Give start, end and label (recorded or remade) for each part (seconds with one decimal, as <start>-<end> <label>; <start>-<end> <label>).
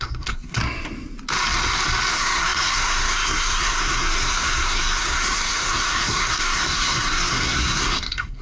0.0-0.6 remade; 0.6-2.1 recorded; 2.1-8.4 remade